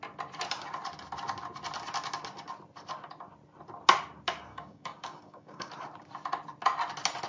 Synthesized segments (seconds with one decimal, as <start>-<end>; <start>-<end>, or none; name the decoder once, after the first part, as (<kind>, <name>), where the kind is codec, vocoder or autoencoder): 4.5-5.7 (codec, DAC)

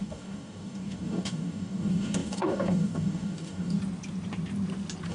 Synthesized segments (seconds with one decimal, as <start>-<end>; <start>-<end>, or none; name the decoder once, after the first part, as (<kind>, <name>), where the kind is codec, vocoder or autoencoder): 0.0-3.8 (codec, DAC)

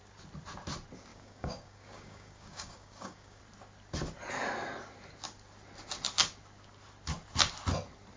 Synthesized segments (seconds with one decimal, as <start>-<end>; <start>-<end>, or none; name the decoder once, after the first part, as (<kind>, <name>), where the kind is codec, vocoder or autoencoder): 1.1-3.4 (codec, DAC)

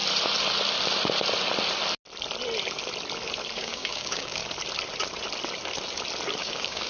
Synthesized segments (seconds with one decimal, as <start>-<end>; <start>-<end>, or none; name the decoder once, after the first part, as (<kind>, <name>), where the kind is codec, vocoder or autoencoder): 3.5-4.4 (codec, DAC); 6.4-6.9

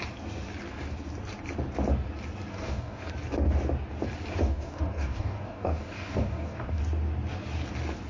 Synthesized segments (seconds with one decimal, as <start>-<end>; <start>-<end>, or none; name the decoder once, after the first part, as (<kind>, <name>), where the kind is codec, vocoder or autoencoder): 2.5-3.1 (codec, DAC); 4.3-6.8